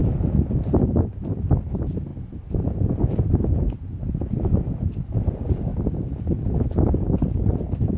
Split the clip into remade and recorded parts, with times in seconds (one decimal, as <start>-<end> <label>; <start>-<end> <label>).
0.0-1.2 recorded; 1.2-2.1 remade; 2.1-3.7 recorded; 3.7-5.7 remade; 5.7-7.1 recorded; 7.1-8.0 remade